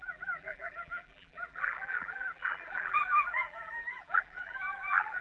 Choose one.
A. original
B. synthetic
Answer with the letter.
B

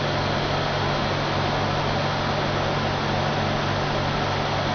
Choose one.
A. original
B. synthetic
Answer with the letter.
A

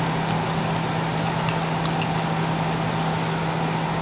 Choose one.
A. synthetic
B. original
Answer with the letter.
B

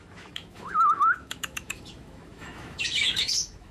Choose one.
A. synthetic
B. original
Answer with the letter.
A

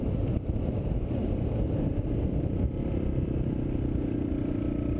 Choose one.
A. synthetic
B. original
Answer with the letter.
A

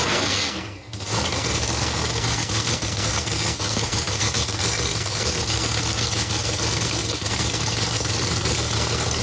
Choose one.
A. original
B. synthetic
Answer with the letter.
B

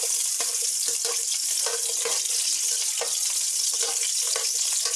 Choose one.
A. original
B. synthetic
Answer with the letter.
A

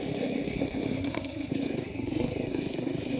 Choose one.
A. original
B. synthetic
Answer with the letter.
B